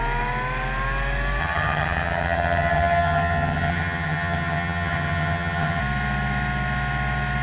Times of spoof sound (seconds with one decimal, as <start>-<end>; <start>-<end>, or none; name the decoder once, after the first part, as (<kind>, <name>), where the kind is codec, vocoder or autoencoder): 1.4-5.8 (vocoder, HiFi-GAN)